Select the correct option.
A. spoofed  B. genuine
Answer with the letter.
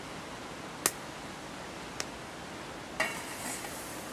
B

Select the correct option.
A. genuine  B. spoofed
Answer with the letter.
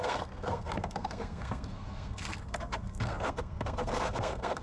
B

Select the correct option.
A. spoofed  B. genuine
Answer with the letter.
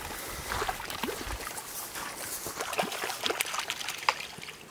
B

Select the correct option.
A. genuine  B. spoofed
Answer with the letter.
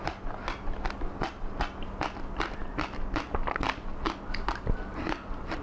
A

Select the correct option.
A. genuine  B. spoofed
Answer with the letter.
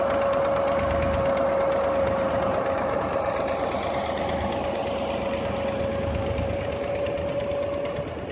A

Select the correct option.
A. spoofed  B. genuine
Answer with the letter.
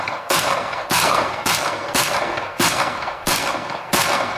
A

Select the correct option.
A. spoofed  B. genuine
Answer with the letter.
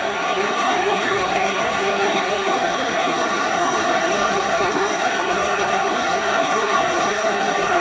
A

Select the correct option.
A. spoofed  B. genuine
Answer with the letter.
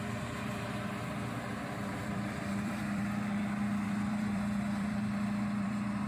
A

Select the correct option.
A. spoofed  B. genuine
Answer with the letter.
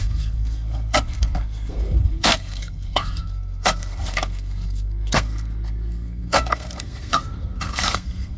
A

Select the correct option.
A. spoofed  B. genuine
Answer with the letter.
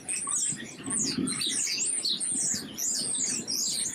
B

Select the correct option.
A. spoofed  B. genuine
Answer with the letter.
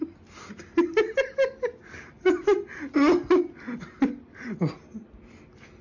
B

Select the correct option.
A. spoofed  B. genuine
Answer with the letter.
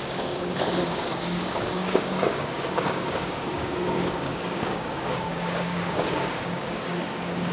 A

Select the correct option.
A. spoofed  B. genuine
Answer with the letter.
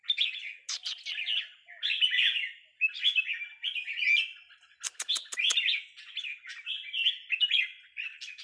B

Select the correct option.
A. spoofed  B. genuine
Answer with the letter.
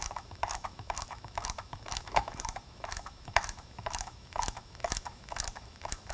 A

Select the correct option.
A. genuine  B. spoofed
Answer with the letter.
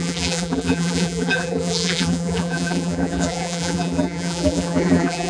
B